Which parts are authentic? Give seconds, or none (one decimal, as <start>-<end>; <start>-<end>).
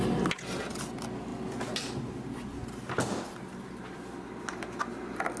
0.0-5.4